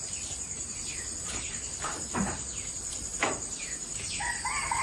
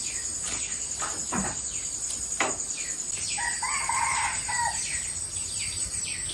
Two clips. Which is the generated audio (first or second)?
first